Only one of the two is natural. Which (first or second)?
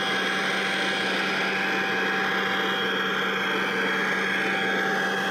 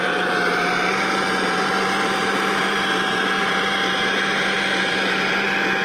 first